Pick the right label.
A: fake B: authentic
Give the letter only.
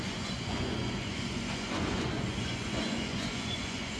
A